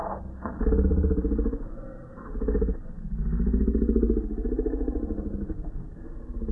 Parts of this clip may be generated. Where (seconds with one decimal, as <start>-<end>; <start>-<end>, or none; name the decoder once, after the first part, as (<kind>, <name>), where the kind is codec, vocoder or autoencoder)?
none